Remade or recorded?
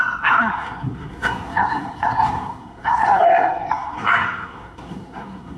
remade